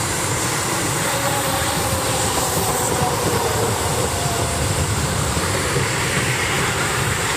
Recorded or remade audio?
remade